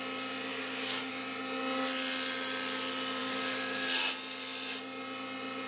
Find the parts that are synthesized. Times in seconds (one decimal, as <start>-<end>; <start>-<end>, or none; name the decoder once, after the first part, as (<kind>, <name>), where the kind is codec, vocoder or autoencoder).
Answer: 0.5-1.1 (codec, DAC); 3.2-4.1